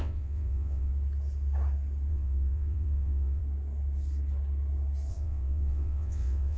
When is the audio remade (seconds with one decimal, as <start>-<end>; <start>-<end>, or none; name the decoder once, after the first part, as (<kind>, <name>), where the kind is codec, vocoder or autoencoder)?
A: 0.0-0.9 (vocoder, WaveNeXt); 2.1-3.4; 5.1-6.6